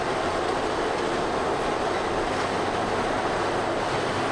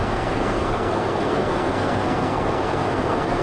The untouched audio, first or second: first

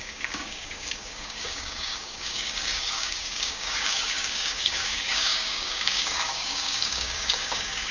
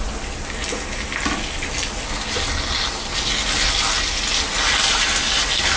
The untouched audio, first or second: second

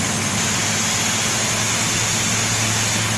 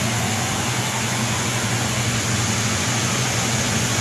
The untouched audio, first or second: first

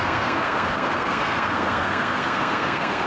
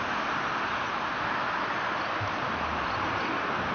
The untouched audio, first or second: second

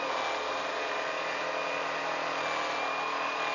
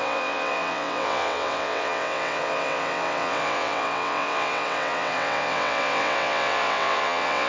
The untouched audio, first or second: first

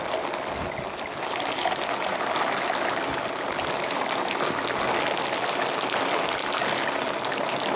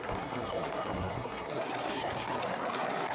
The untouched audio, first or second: first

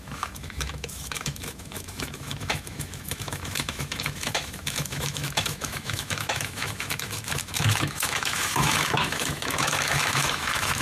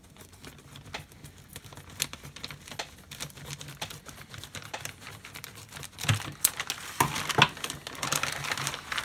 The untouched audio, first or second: second